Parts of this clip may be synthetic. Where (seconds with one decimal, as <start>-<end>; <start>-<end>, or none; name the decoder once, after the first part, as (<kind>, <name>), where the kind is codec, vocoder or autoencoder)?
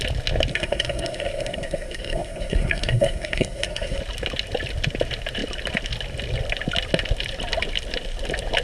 0.5-4.0 (codec, SNAC)